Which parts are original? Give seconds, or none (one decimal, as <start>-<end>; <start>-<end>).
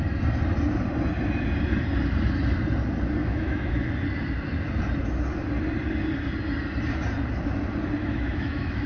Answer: 0.0-3.2; 3.9-8.0